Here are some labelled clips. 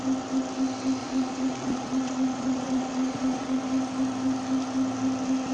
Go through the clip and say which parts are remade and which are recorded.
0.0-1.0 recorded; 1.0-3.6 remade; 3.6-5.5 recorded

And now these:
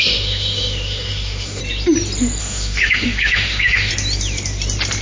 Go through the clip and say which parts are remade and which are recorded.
0.0-1.6 remade; 1.6-2.4 recorded; 2.4-3.9 remade; 3.9-5.0 recorded

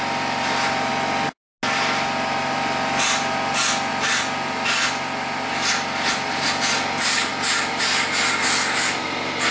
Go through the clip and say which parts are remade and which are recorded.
0.0-0.9 remade; 0.9-3.9 recorded; 3.9-7.3 remade; 7.3-8.4 recorded; 8.4-9.5 remade

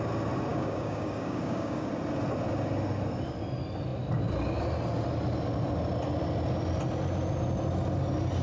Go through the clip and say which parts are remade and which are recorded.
0.0-0.5 recorded; 0.5-1.9 remade; 1.9-8.4 recorded

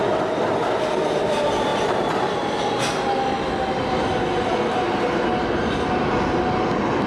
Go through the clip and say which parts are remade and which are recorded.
0.0-7.1 recorded

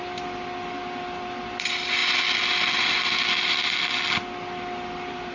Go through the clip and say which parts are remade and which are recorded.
0.0-5.3 recorded

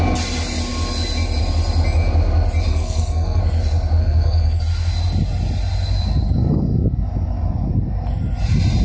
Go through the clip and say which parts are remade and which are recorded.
0.0-2.7 recorded; 2.7-3.4 remade; 3.4-4.0 recorded; 4.0-4.6 remade; 4.6-8.8 recorded

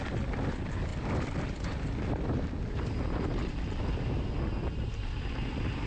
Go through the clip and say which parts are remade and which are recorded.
0.0-5.9 recorded